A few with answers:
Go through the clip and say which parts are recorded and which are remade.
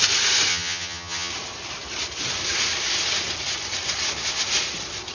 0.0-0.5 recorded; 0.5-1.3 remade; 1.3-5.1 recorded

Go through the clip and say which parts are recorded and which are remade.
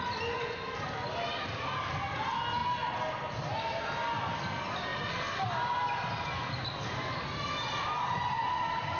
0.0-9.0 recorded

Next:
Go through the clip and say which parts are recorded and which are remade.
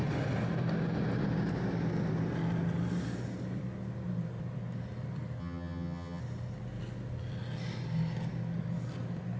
0.0-5.4 recorded; 5.4-6.2 remade; 6.2-9.4 recorded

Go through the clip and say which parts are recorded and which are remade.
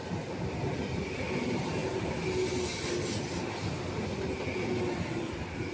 0.0-5.7 recorded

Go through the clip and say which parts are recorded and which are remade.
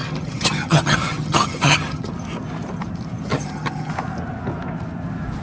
0.0-2.1 remade; 2.1-3.3 recorded; 3.3-3.9 remade; 3.9-5.4 recorded